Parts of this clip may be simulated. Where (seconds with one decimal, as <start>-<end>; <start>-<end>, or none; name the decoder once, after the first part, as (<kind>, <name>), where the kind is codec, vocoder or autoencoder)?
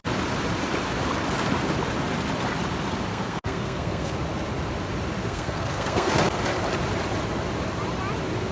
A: 3.1-4.2 (codec, SNAC); 5.2-6.2